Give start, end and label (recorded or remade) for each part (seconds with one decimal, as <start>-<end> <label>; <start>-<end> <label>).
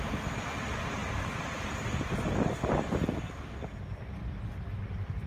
0.0-5.3 recorded